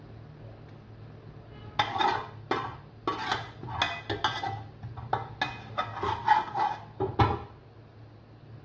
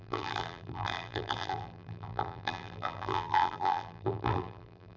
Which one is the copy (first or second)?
second